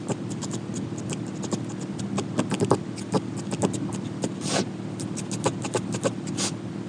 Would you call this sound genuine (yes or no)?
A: yes